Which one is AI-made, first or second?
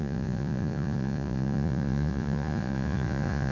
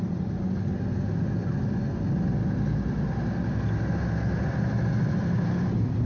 first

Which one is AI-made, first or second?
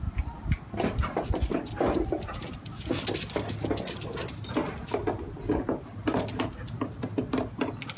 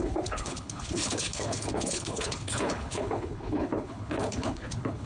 second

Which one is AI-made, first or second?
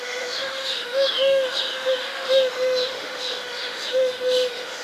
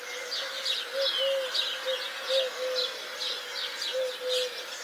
first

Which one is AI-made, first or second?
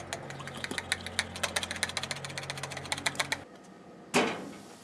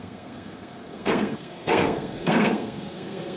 second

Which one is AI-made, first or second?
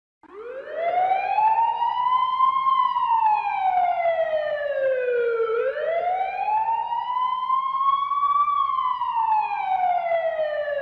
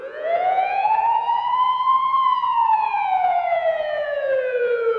second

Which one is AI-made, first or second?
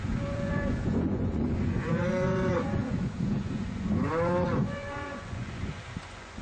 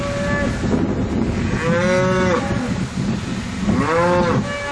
first